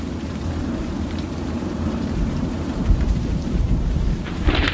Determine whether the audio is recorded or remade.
remade